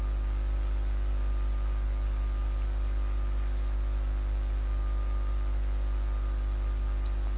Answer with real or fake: real